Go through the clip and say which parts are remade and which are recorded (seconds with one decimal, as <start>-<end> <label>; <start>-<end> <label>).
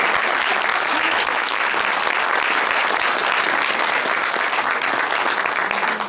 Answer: 0.0-0.7 recorded; 0.7-1.6 remade; 1.6-6.1 recorded